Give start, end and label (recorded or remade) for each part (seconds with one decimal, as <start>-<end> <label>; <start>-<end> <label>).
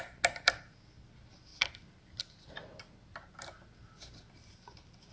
0.0-1.5 recorded; 1.5-3.6 remade; 3.6-5.1 recorded